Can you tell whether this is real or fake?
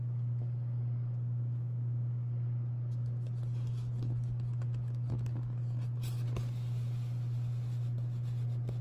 real